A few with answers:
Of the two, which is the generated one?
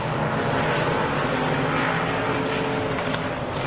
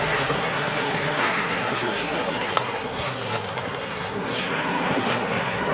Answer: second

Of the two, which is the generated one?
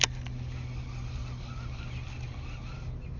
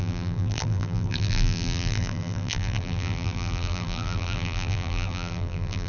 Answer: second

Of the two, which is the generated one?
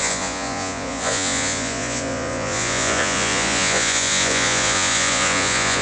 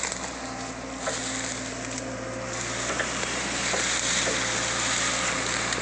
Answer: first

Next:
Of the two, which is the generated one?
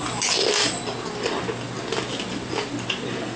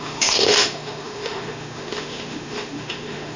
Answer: second